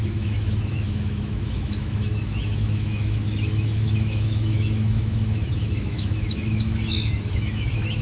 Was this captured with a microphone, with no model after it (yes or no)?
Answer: no